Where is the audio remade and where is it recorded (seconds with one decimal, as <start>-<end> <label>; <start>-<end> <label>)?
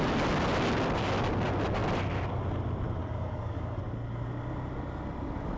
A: 0.0-3.0 recorded; 3.0-3.8 remade; 3.8-5.6 recorded